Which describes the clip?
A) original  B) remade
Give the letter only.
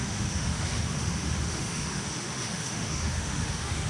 B